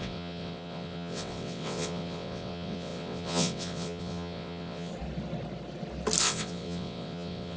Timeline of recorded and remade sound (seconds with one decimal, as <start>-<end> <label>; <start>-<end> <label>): 0.0-4.9 remade; 4.9-6.2 recorded; 6.2-7.6 remade